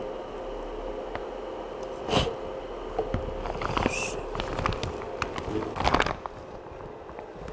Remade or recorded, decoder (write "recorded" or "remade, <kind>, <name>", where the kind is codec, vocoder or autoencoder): recorded